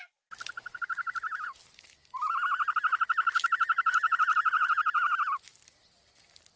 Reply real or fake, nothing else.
real